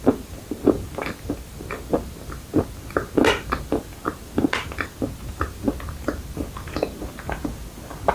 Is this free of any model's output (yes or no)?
yes